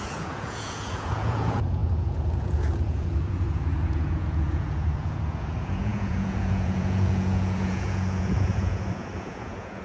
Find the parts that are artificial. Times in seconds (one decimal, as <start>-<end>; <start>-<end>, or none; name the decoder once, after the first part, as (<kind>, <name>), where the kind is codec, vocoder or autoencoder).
0.0-9.8 (vocoder, Vocos)